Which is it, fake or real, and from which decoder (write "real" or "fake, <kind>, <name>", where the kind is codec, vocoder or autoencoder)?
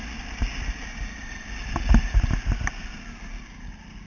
real